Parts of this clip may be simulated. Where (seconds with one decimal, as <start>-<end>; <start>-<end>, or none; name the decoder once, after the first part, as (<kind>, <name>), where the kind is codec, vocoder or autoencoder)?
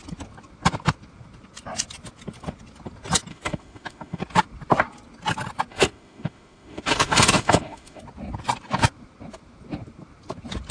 3.3-4.2 (autoencoder, DAC-VAE); 5.7-8.0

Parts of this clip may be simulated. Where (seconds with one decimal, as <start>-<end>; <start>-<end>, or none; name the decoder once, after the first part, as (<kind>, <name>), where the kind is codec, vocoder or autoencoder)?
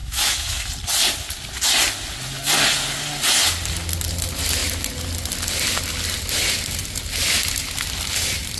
0.0-0.7 (autoencoder, DAC-VAE)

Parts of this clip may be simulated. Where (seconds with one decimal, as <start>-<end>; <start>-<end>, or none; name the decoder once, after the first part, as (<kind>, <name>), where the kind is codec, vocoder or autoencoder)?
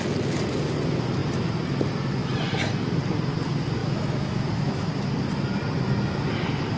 3.8-4.9 (autoencoder, DAC-VAE)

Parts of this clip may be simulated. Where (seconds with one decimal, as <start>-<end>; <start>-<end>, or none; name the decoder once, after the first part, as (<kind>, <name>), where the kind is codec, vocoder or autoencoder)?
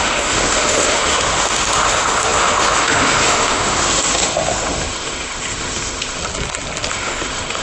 0.0-6.2 (autoencoder, DAC-VAE); 6.9-7.6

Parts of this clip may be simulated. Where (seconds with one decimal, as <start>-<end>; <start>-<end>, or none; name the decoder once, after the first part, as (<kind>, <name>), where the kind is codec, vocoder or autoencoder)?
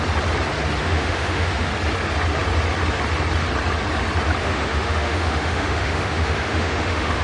0.8-1.7 (autoencoder, DAC-VAE); 4.4-7.2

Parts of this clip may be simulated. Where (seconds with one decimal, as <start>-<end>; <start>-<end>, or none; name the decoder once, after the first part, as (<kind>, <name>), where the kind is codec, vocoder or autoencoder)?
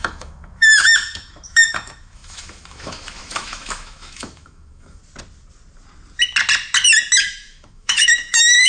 0.0-5.0 (autoencoder, DAC-VAE); 7.2-8.7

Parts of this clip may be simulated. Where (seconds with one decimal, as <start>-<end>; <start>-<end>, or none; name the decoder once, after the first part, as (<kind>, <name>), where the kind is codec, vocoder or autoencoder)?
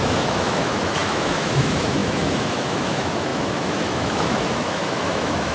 0.0-5.5 (autoencoder, DAC-VAE)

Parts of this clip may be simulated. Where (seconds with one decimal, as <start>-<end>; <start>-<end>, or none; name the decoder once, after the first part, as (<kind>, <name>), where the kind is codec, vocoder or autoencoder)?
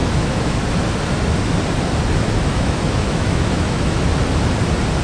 0.0-0.6 (autoencoder, DAC-VAE); 2.5-4.0